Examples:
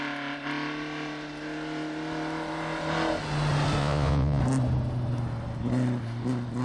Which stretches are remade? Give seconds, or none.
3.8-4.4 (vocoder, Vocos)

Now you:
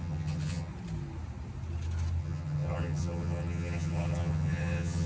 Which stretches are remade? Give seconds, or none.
0.0-0.7 (vocoder, HiFi-GAN); 2.2-5.1

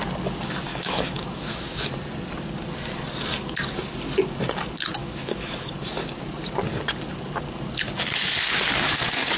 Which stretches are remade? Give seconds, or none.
0.7-1.9 (autoencoder, DAC-VAE); 5.0-5.7

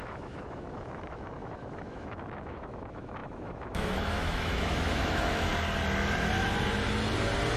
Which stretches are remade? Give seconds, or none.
0.0-5.5 (autoencoder, DAC-VAE)

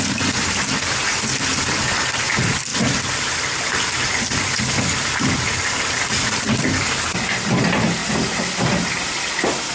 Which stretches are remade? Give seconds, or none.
2.7-3.7 (vocoder, BigVGAN v2); 8.0-9.2

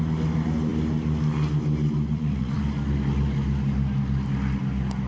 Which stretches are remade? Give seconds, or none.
2.1-2.6 (vocoder, Vocos)